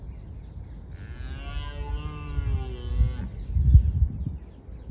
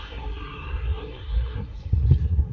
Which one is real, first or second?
first